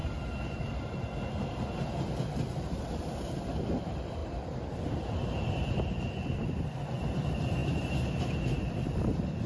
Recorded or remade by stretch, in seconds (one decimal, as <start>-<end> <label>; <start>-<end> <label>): 0.0-3.0 recorded; 3.0-7.6 remade; 7.6-8.3 recorded; 8.3-9.5 remade